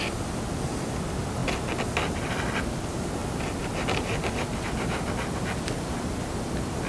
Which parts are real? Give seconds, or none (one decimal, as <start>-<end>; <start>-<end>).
0.0-6.9